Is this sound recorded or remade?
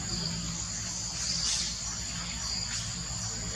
recorded